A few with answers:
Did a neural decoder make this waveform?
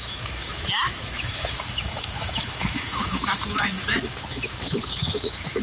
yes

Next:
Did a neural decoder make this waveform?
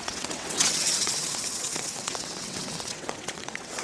yes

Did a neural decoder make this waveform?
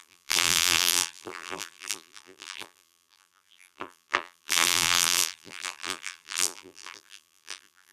yes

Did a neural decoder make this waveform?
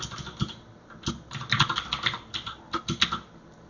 no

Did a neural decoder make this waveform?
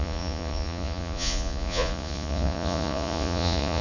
yes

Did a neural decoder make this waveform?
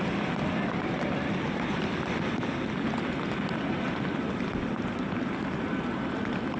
no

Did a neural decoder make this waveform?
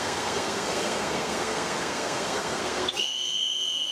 yes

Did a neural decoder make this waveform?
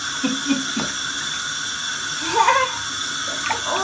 no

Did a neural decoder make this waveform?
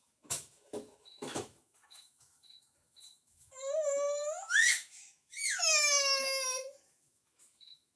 yes